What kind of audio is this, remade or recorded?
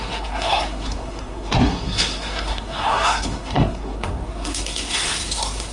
remade